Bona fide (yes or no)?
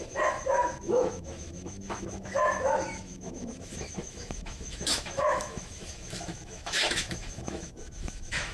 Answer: no